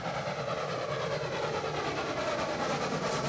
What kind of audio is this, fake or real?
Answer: real